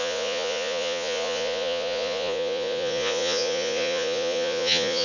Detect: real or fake fake